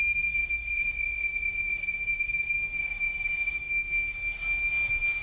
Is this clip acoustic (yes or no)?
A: no